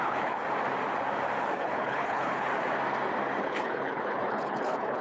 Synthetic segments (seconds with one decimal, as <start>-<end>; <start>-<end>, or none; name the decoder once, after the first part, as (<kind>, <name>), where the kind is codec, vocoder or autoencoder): 0.0-0.4 (codec, HILCodec); 1.4-2.5; 3.4-5.0